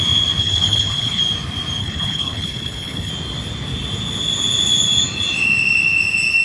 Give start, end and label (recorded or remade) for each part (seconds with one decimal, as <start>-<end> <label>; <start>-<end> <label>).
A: 0.0-0.4 recorded; 0.4-1.2 remade; 1.2-1.8 recorded; 1.8-3.1 remade; 3.1-6.4 recorded